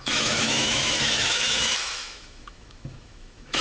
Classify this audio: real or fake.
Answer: fake